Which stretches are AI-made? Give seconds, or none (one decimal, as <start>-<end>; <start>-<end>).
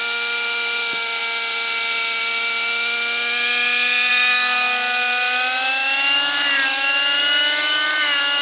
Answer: none